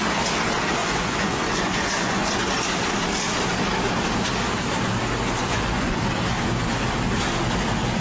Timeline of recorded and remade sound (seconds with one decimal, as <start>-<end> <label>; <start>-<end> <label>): 0.0-0.8 recorded; 0.8-2.3 remade; 2.3-5.4 recorded; 5.4-6.0 remade; 6.0-8.0 recorded